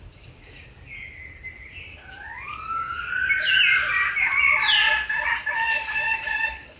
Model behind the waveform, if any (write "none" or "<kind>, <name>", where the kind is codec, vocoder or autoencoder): none